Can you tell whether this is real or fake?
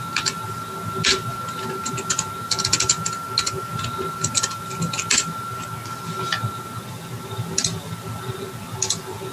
real